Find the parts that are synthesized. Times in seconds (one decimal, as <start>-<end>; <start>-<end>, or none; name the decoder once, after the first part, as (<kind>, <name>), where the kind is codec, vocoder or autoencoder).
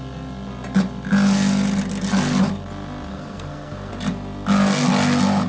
3.1-3.9 (codec, SNAC)